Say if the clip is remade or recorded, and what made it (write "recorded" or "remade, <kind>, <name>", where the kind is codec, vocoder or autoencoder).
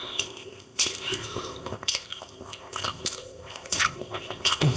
remade, codec, ZipCodec